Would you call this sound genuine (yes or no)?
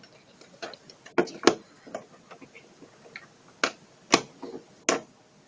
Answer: yes